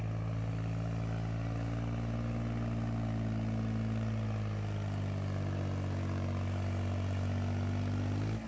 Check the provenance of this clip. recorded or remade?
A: recorded